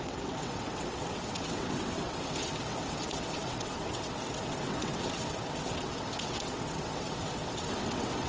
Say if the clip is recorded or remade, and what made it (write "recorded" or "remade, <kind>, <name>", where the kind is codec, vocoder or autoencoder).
remade, vocoder, WaveNeXt